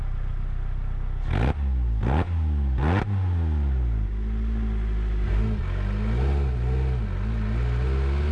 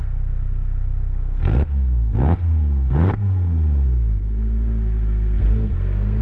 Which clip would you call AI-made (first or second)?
second